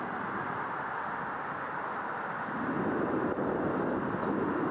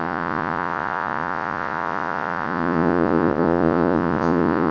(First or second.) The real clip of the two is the first